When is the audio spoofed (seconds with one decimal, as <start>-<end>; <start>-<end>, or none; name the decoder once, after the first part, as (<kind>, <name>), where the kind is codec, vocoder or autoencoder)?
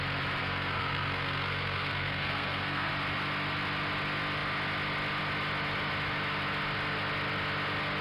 0.4-2.9 (codec, SNAC)